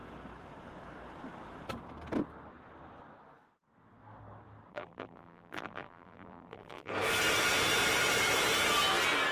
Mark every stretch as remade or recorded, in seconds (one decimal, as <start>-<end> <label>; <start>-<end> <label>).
0.0-4.7 recorded; 4.7-6.9 remade; 6.9-9.3 recorded